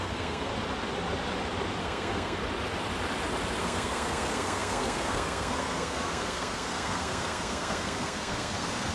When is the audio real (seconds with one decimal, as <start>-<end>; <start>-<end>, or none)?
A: 0.5-1.8; 2.4-3.6